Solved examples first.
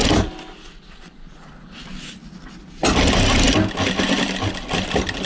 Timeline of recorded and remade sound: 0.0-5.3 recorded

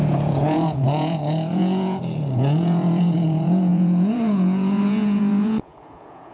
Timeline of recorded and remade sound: 0.0-6.3 remade

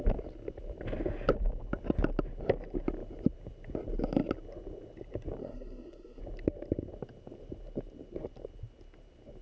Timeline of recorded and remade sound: 0.0-5.4 recorded; 5.4-6.2 remade; 6.2-9.4 recorded

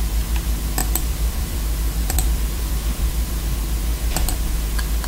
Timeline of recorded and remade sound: 0.0-0.8 recorded; 0.8-3.4 remade; 3.4-5.1 recorded

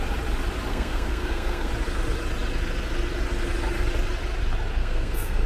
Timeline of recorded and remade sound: 0.0-0.7 recorded; 0.7-1.7 remade; 1.7-4.8 recorded; 4.8-5.5 remade

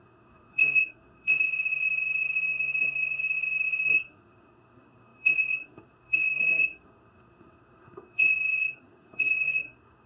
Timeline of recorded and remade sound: 0.0-10.1 remade

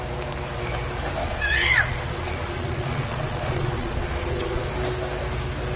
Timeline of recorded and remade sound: 0.0-1.2 recorded; 1.2-4.7 remade; 4.7-5.8 recorded

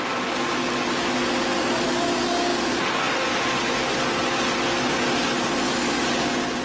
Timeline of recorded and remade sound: 0.0-6.6 recorded